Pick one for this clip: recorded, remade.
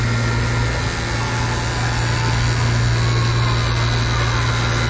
recorded